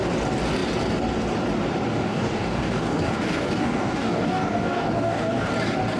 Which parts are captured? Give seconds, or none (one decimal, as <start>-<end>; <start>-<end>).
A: 0.0-1.9; 5.5-6.0